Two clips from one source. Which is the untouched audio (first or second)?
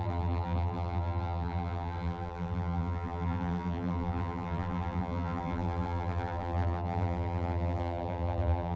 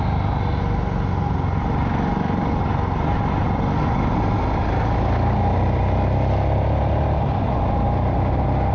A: second